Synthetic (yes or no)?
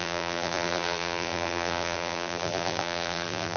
yes